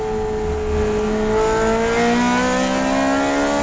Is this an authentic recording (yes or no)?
yes